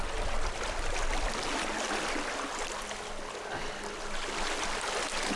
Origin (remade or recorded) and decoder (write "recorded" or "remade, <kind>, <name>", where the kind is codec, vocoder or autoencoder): recorded